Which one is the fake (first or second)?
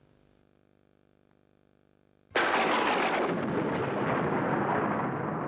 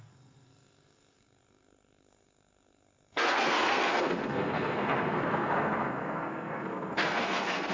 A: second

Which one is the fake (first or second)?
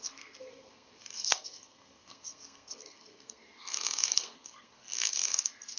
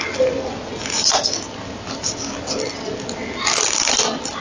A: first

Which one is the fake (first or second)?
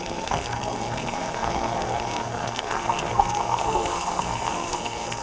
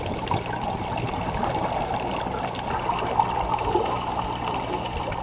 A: first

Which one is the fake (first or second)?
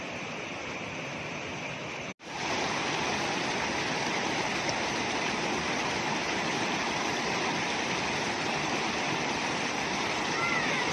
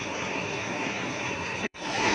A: second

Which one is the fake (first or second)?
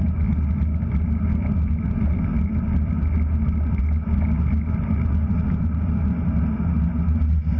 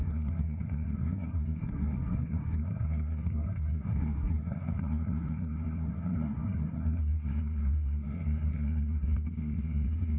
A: second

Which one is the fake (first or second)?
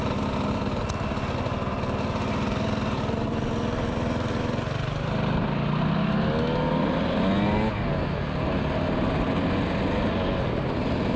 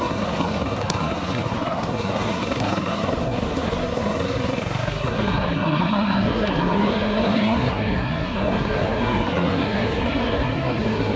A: second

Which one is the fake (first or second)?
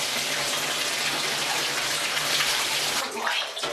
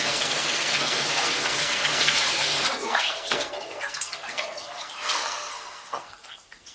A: second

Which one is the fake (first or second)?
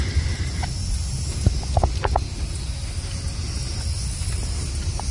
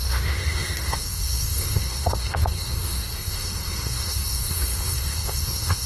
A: second